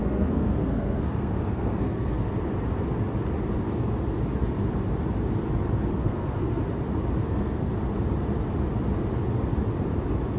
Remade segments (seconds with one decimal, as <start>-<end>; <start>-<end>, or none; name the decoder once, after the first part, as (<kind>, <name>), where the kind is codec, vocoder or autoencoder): 0.0-2.3 (codec, SNAC); 5.9-6.6; 7.2-7.7